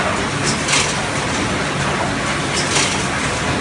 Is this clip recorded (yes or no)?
yes